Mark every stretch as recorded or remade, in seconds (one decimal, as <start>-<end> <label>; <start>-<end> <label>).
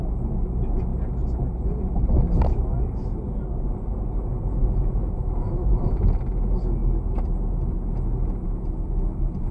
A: 0.0-5.0 recorded; 5.0-5.9 remade; 5.9-9.5 recorded